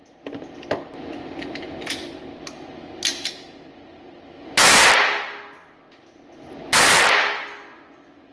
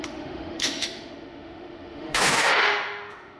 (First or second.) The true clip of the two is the first